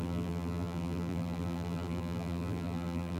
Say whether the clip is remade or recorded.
remade